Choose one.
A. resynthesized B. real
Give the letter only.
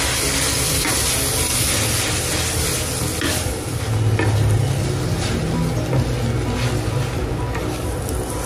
B